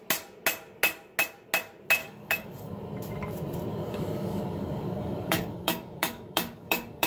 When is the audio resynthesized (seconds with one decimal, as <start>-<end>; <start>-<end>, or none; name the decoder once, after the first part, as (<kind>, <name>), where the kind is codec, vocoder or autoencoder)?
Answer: 2.0-2.8 (codec, DAC); 3.7-7.1